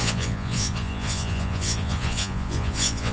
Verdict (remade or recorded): remade